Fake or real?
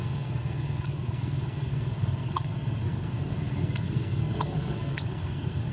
fake